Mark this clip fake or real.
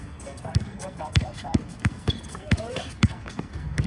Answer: fake